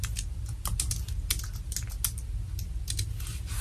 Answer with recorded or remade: recorded